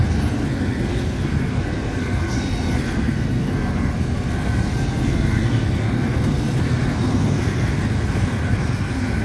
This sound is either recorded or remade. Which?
remade